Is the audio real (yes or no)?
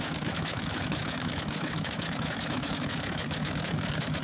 no